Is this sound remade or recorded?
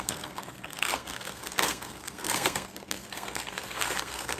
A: remade